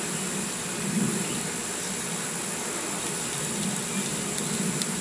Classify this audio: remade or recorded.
recorded